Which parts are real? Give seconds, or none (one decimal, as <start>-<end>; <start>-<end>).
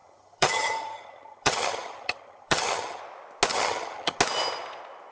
3.0-3.5; 4.2-5.1